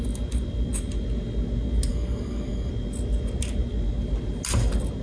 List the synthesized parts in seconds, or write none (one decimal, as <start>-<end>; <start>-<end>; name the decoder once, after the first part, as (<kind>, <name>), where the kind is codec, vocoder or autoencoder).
1.9-2.7 (codec, DAC)